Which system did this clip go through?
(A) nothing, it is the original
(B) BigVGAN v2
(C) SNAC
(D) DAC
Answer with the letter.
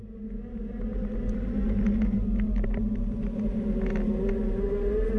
A